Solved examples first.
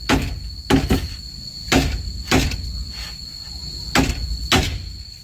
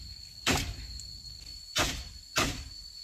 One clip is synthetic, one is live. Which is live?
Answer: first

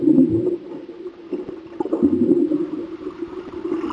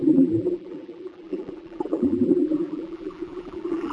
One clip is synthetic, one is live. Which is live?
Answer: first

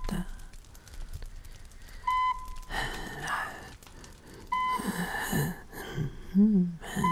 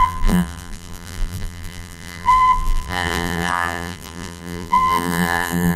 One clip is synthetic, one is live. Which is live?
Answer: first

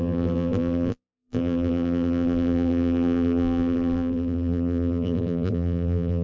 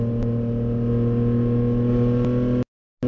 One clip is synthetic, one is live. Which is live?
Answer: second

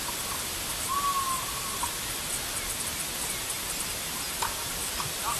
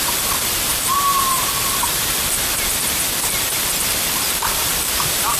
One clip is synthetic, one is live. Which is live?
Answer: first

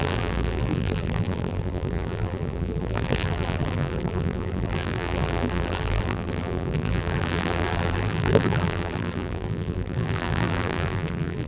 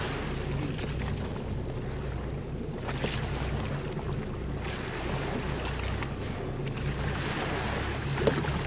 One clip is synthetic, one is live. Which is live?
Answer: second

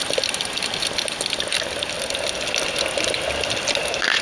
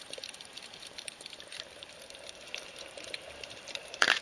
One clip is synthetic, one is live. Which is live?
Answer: first